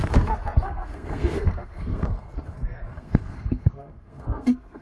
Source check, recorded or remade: remade